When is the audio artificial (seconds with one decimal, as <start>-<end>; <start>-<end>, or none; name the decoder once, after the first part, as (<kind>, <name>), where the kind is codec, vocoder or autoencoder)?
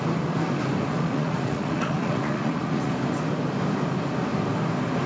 0.9-2.9 (vocoder, Vocos)